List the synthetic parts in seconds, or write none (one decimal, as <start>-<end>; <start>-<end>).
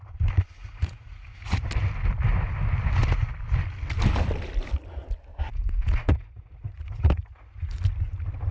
0.6-1.6; 5.5-7.8